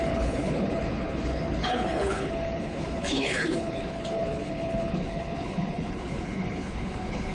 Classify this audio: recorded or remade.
remade